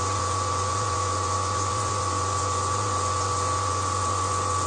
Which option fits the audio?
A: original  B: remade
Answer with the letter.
B